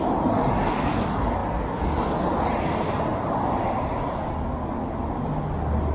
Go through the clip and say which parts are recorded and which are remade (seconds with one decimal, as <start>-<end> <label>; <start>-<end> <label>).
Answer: 0.0-5.9 recorded